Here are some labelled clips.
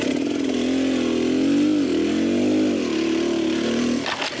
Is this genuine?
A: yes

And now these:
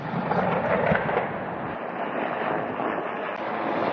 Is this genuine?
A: yes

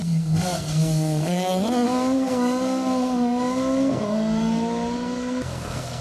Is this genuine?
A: no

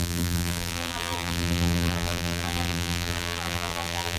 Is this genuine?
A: no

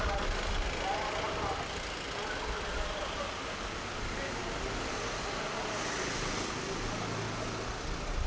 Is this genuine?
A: yes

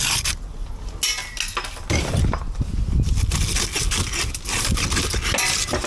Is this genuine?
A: yes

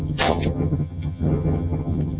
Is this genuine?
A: no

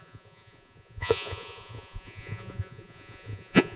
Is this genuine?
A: no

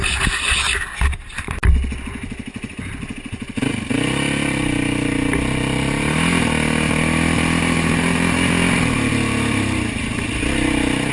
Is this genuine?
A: yes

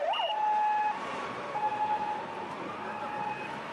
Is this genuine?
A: yes